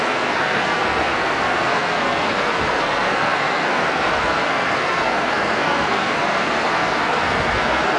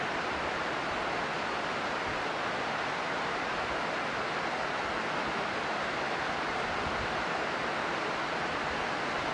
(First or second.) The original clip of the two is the second